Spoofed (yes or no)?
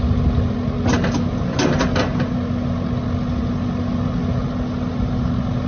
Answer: no